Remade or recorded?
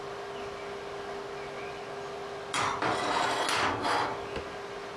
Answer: recorded